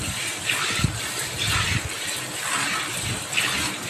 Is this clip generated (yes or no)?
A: no